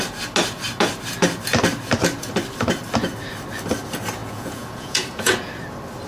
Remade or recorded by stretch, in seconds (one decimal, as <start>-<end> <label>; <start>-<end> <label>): 0.0-4.2 recorded; 4.2-5.5 remade; 5.5-6.1 recorded